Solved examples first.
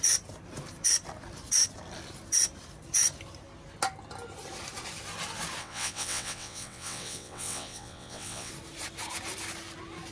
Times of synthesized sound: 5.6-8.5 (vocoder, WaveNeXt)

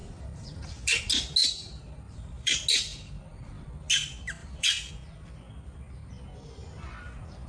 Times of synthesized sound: 0.0-1.0 (vocoder, BigVGAN v2); 1.4-2.6; 4.4-4.9

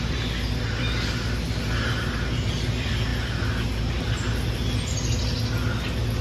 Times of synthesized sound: none

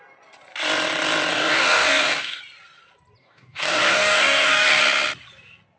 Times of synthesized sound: 1.3-2.4 (codec, DAC); 3.2-4.8

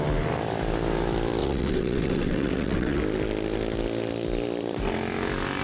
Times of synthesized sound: 1.4-3.0 (vocoder, WaveNeXt)